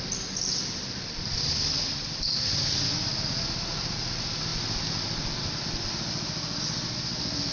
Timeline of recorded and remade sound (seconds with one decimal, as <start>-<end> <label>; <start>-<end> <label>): 0.0-0.5 recorded; 0.5-3.2 remade; 3.2-4.5 recorded; 4.5-6.6 remade; 6.6-7.5 recorded